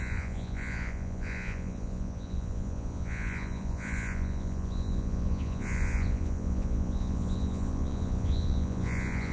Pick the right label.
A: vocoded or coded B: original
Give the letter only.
A